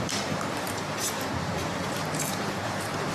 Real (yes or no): no